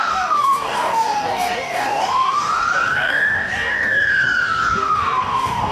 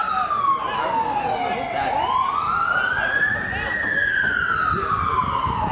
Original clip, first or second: second